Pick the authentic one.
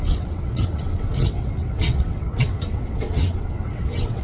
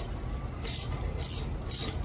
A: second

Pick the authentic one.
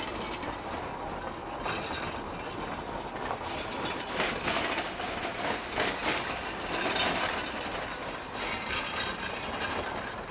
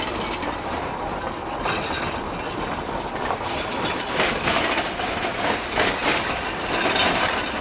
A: first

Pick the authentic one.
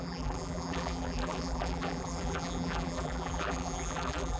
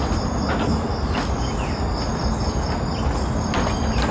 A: second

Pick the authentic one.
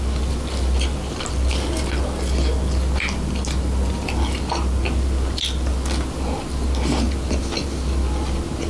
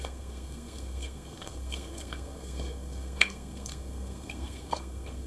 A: first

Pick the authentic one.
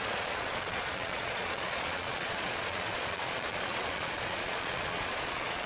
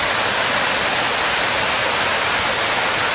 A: second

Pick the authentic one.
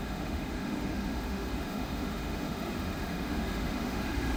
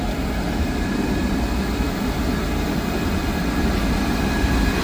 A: second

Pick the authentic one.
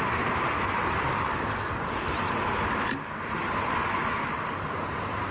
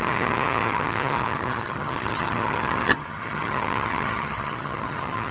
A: first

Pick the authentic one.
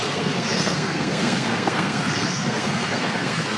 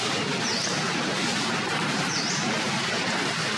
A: second